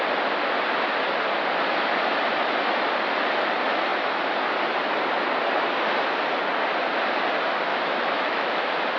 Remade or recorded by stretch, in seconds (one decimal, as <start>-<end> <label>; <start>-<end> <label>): 0.0-7.7 recorded; 7.7-8.6 remade; 8.6-9.0 recorded